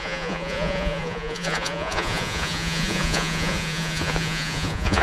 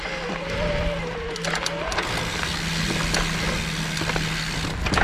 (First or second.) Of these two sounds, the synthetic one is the first